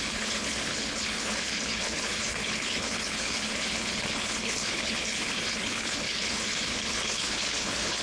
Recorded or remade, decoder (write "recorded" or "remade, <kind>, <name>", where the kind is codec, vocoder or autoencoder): remade, codec, HILCodec